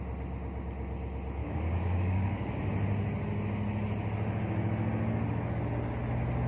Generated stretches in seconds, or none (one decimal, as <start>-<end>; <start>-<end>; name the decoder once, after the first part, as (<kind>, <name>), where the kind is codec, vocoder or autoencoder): 1.4-2.6 (codec, DAC)

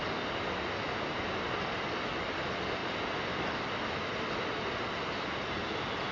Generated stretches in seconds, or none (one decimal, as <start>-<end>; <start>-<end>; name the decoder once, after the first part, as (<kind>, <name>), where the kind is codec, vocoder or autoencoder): none